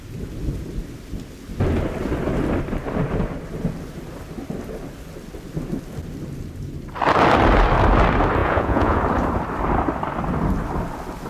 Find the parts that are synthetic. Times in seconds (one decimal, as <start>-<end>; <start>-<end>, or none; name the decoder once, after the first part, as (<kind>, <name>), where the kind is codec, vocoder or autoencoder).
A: 8.4-9.0 (vocoder, Vocos)